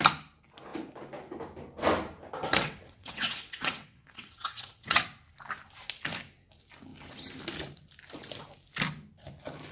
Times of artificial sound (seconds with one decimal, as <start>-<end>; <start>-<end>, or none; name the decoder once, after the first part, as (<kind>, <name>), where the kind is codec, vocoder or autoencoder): 2.4-5.0 (vocoder, WaveNeXt)